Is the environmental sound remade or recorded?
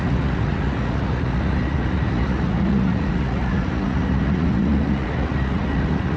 remade